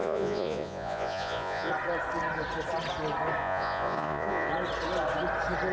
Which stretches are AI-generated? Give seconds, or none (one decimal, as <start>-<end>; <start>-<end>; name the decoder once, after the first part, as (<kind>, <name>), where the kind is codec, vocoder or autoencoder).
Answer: 0.0-1.7 (vocoder, Vocos); 3.4-4.5